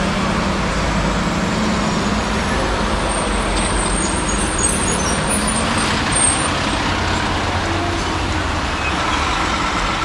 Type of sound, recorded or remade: recorded